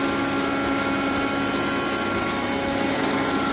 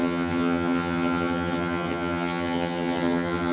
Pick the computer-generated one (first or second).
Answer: second